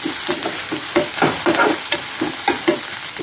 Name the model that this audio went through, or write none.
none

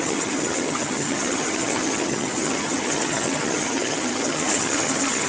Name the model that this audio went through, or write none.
vocoder, HiFi-GAN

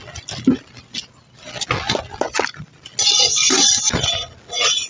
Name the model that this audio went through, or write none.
none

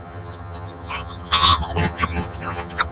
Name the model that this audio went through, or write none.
vocoder, HiFi-GAN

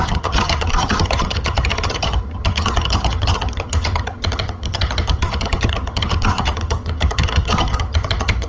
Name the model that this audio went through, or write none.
vocoder, HiFi-GAN